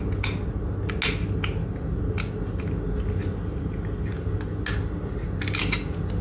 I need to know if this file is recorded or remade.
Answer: recorded